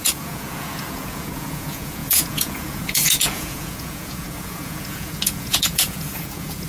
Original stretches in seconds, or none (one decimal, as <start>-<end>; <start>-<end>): none